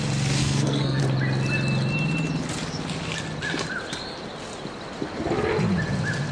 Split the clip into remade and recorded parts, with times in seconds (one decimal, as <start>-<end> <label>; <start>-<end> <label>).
0.0-0.4 recorded; 0.4-1.0 remade; 1.0-6.3 recorded